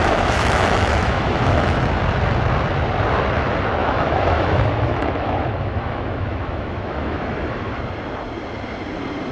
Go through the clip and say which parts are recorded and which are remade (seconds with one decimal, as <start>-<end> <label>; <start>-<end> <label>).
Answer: 0.0-2.0 remade; 2.0-3.8 recorded; 3.8-7.8 remade; 7.8-9.3 recorded